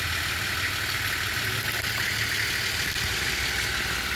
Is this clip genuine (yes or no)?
yes